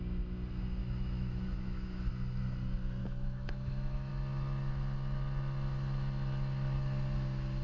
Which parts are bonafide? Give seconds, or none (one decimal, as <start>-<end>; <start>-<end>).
0.0-0.8; 2.1-3.0; 4.1-7.6